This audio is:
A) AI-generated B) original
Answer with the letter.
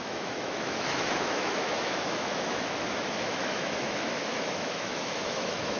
A